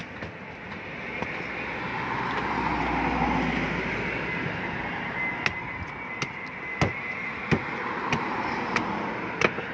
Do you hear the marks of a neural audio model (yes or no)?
no